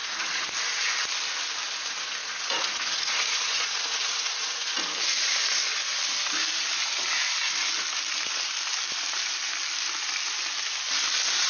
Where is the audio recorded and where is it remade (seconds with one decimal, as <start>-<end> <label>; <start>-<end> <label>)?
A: 0.0-0.5 remade; 0.5-2.2 recorded; 2.2-4.8 remade; 4.8-11.5 recorded